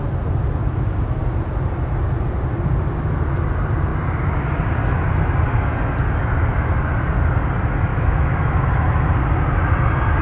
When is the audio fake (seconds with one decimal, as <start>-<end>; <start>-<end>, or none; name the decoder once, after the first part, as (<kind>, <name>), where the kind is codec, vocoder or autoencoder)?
0.6-1.2 (autoencoder, DAC-VAE); 7.9-9.1